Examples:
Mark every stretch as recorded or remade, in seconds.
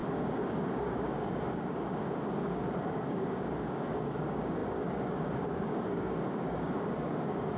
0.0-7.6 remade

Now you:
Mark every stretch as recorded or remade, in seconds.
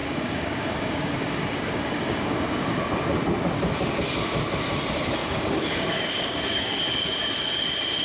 0.0-2.8 remade; 2.8-5.2 recorded; 5.2-6.7 remade; 6.7-8.0 recorded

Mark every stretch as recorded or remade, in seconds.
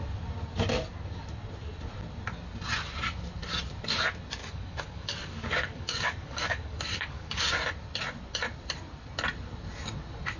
0.0-4.4 recorded; 4.4-7.4 remade; 7.4-10.4 recorded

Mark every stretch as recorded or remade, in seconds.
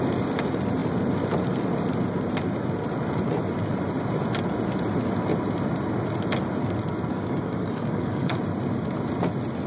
0.0-7.1 recorded; 7.1-8.4 remade; 8.4-9.7 recorded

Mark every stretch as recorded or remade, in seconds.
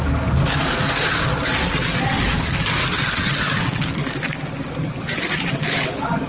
0.0-1.3 remade; 1.3-2.4 recorded; 2.4-2.8 remade; 2.8-3.4 recorded; 3.4-4.0 remade; 4.0-5.6 recorded; 5.6-6.3 remade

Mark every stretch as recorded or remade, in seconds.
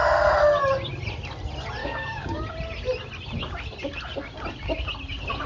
0.0-1.8 recorded; 1.8-2.4 remade; 2.4-5.5 recorded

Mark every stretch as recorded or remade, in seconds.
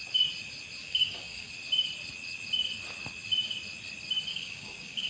0.0-0.8 recorded; 0.8-1.5 remade; 1.5-4.3 recorded; 4.3-5.1 remade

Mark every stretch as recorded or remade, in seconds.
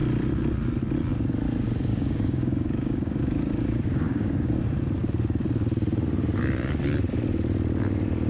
0.0-1.9 recorded; 1.9-4.5 remade; 4.5-8.3 recorded